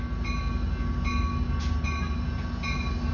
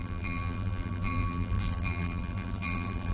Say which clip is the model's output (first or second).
second